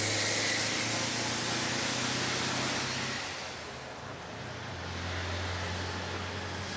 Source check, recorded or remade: recorded